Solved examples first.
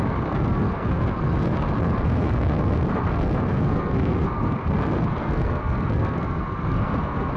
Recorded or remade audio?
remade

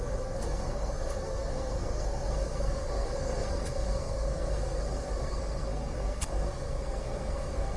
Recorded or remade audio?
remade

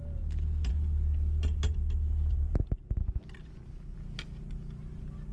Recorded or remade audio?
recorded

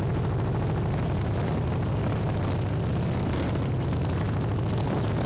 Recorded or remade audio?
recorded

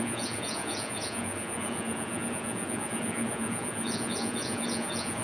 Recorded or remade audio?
remade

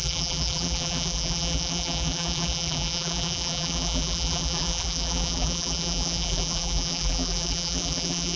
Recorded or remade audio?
remade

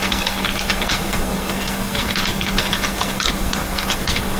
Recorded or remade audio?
remade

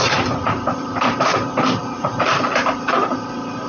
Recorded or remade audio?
remade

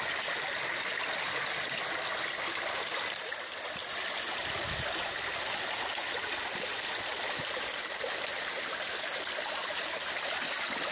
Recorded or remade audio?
recorded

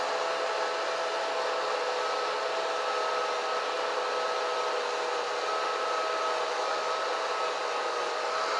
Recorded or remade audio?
recorded